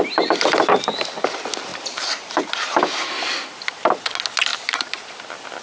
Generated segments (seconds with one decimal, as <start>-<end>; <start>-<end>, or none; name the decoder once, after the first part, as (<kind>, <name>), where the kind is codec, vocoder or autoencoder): 1.7-2.4 (vocoder, BigVGAN v2); 4.5-5.1

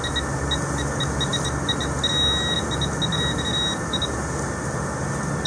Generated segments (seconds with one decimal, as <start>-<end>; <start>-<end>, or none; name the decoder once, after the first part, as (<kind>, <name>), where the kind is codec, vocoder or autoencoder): none

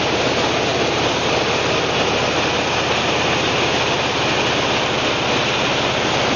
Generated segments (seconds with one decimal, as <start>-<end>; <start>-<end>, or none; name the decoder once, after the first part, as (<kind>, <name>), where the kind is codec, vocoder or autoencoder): none

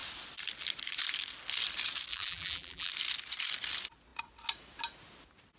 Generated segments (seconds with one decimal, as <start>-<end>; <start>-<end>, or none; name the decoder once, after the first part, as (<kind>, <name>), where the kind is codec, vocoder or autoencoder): 2.1-2.9 (vocoder, BigVGAN v2)

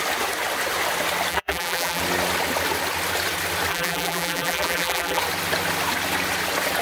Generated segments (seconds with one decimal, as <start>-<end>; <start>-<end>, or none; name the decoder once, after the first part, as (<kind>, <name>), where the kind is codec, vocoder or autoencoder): 1.3-2.0 (vocoder, BigVGAN v2); 3.7-5.2